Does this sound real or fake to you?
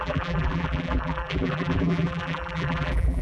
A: fake